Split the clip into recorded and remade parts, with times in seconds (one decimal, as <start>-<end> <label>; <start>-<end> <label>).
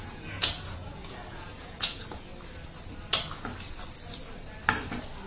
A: 0.0-2.3 remade; 2.3-5.3 recorded